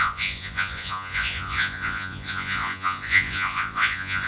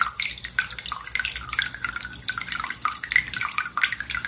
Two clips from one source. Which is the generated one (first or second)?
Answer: first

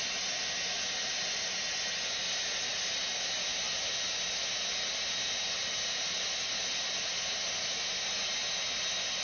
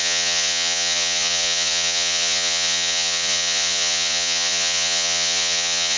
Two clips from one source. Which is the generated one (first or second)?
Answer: second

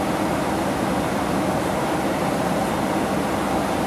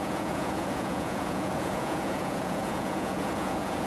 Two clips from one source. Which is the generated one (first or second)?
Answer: second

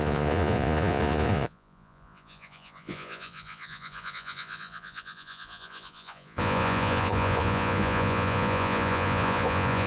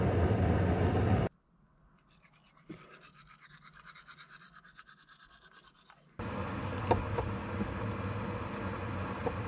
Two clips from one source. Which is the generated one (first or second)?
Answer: first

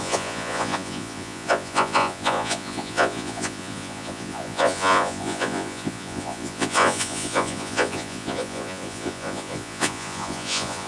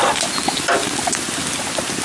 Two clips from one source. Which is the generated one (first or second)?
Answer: first